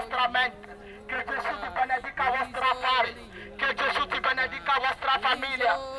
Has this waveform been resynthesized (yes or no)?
no